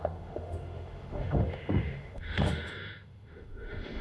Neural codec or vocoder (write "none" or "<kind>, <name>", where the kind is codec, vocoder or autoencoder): autoencoder, DAC-VAE